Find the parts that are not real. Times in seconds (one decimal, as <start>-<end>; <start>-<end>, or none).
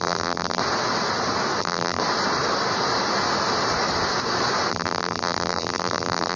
0.0-0.6; 1.6-2.0; 4.7-6.4